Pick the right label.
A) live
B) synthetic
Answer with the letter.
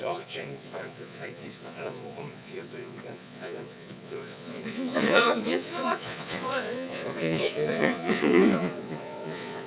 B